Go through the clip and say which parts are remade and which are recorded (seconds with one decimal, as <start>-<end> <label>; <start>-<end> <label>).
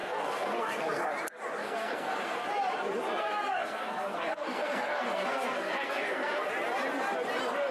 0.0-1.1 remade; 1.1-1.6 recorded; 1.6-2.5 remade; 2.5-3.2 recorded; 3.2-6.5 remade; 6.5-7.7 recorded